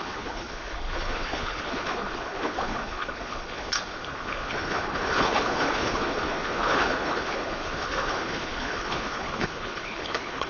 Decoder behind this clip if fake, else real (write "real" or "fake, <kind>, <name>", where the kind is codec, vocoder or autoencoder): fake, codec, HILCodec